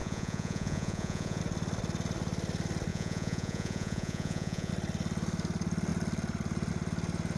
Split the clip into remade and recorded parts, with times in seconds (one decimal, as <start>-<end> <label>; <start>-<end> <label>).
0.0-1.4 remade; 1.4-2.9 recorded; 2.9-4.7 remade; 4.7-7.4 recorded